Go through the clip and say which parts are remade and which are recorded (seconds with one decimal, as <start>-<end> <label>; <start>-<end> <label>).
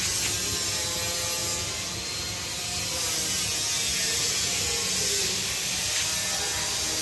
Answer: 0.0-7.0 recorded